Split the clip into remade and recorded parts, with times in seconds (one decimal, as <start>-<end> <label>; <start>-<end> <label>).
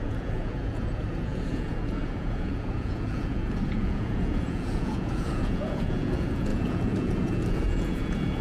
0.0-8.4 remade